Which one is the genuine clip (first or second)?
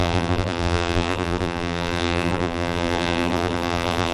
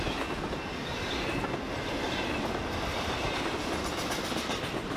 second